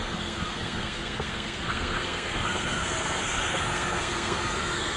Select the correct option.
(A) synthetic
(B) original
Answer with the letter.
A